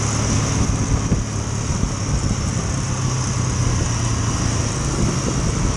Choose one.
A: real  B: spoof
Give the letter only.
A